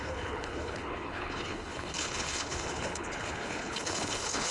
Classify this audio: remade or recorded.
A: remade